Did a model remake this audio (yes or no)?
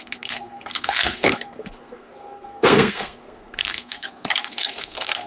yes